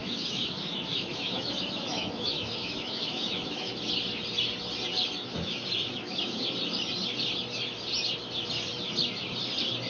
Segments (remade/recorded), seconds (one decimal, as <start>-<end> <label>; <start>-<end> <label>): 0.0-3.7 remade; 3.7-5.2 recorded; 5.2-6.4 remade; 6.4-9.9 recorded